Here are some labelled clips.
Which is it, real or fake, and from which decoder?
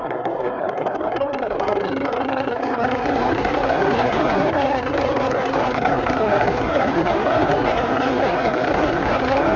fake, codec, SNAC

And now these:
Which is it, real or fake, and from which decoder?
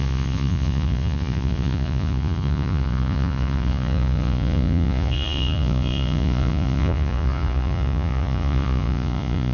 fake, vocoder, Vocos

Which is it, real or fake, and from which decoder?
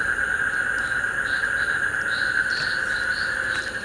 real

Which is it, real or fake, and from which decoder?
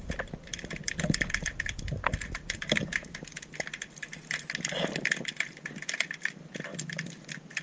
real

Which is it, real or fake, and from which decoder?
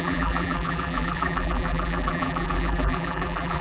fake, vocoder, BigVGAN v2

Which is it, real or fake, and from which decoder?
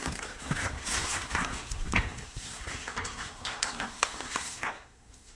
fake, codec, SNAC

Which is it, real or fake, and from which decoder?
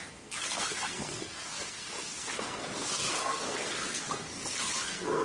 fake, codec, SNAC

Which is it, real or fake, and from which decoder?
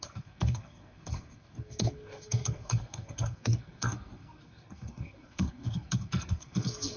fake, codec, SNAC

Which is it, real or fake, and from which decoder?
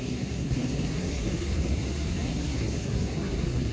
fake, codec, SNAC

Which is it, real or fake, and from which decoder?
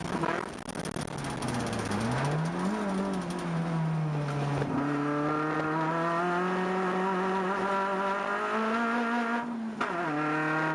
real